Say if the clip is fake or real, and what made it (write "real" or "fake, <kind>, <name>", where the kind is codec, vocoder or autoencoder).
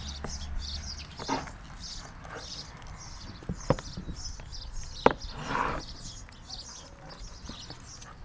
real